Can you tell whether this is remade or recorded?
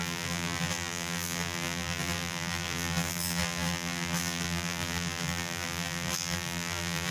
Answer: remade